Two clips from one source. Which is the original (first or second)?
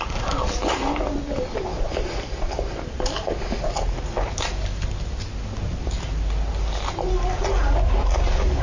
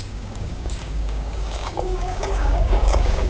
first